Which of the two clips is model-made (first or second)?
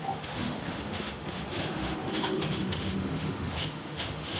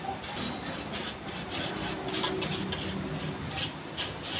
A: first